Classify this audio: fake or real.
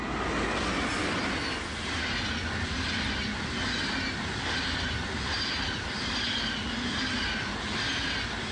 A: real